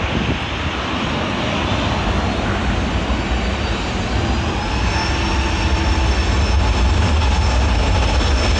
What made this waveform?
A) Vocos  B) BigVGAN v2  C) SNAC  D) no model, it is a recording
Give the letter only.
D